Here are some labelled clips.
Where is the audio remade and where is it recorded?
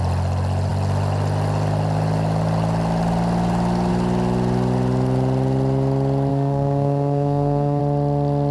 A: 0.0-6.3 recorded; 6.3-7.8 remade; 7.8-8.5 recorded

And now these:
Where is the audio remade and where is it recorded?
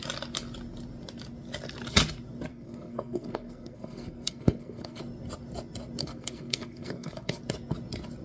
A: 0.0-2.5 recorded; 2.5-5.0 remade; 5.0-6.0 recorded; 6.0-7.4 remade; 7.4-8.2 recorded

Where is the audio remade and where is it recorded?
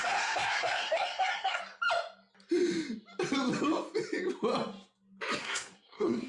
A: 0.0-1.6 remade; 1.6-5.4 recorded; 5.4-6.3 remade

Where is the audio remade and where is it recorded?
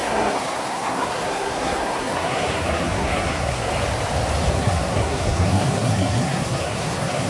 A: 0.0-3.7 remade; 3.7-4.5 recorded; 4.5-7.3 remade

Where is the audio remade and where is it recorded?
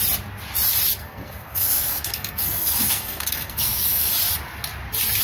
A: 0.0-1.0 recorded; 1.0-4.1 remade; 4.1-5.2 recorded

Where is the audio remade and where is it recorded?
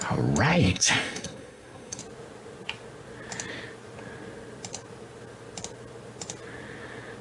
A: 0.0-0.5 recorded; 0.5-2.0 remade; 2.0-7.2 recorded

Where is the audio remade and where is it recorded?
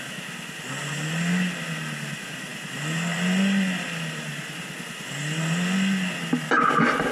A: 0.0-7.1 recorded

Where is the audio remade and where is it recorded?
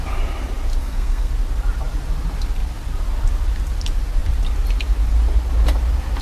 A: 0.0-0.8 recorded; 0.8-1.3 remade; 1.3-6.2 recorded